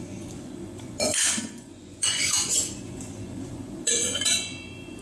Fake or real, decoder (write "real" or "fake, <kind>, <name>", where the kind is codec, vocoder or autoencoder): fake, vocoder, Vocos